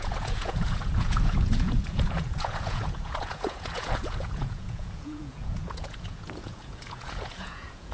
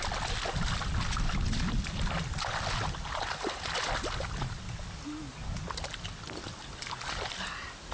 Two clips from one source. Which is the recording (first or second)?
second